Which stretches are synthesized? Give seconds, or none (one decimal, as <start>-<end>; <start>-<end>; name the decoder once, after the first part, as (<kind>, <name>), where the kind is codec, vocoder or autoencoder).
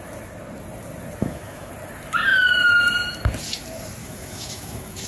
1.2-1.7 (autoencoder, DAC-VAE); 4.0-5.1